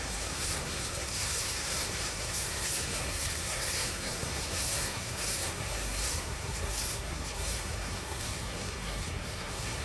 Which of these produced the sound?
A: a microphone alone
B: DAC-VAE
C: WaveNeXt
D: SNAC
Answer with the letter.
D